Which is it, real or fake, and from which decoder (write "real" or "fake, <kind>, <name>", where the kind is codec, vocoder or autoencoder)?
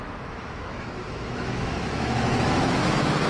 fake, autoencoder, DAC-VAE